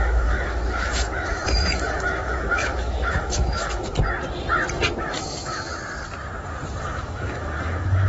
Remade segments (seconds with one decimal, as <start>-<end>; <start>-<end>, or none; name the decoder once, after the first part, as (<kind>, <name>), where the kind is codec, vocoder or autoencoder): 0.0-3.9 (autoencoder, DAC-VAE); 5.0-5.7; 6.8-8.1